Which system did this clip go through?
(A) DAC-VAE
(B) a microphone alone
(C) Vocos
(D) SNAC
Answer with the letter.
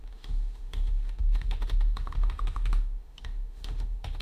A